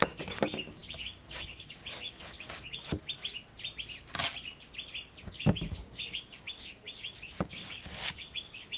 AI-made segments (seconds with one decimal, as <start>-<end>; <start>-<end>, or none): 0.0-2.8; 5.2-8.8

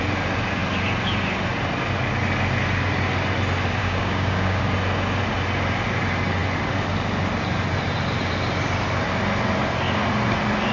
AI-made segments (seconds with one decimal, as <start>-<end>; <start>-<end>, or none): 3.8-4.6

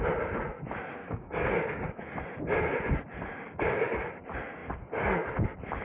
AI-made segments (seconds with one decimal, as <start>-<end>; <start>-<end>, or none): 1.0-2.2

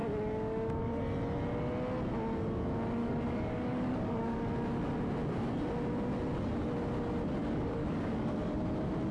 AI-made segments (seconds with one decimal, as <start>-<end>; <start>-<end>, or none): 0.0-0.9; 3.0-4.5; 7.4-8.6

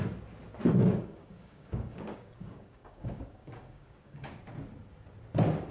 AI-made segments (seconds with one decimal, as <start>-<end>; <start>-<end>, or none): 0.9-4.3

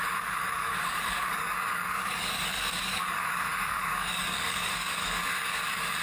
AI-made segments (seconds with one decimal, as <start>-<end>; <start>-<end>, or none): 0.0-6.0

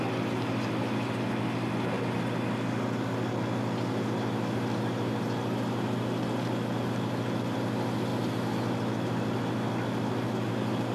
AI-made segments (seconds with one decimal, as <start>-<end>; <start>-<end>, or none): none